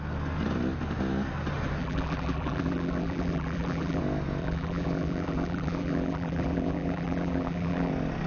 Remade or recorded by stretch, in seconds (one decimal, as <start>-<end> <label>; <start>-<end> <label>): 0.0-1.8 recorded; 1.8-4.0 remade; 4.0-4.4 recorded; 4.4-7.9 remade; 7.9-8.3 recorded